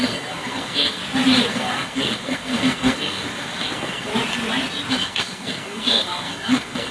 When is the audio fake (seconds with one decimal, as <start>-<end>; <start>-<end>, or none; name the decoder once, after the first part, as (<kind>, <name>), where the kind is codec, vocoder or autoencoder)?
0.0-1.0 (codec, SNAC); 1.5-4.1; 4.9-6.9